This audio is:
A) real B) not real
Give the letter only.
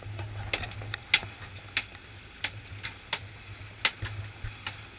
A